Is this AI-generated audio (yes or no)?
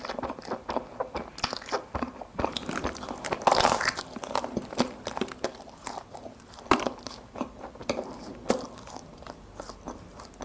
no